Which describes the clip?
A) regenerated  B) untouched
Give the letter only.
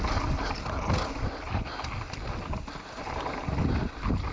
B